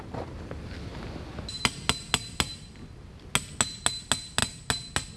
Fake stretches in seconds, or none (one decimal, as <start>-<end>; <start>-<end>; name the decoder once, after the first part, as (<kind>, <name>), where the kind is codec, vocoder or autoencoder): none